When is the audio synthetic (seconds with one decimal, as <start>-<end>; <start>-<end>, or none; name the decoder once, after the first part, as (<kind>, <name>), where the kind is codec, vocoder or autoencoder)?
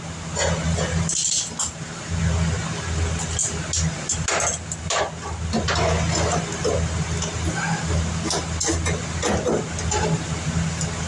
none